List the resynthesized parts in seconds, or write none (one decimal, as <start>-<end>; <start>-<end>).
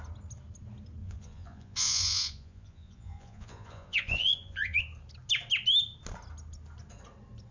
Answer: 1.0-4.8